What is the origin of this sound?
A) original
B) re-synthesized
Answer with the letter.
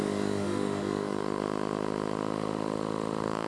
B